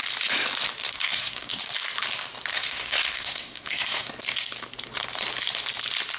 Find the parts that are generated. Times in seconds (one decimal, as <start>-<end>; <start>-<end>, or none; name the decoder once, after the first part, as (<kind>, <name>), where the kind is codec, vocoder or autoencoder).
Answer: 0.8-1.6 (codec, SNAC); 2.5-4.1